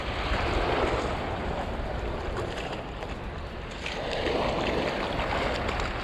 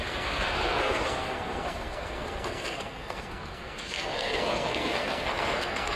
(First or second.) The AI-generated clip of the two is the second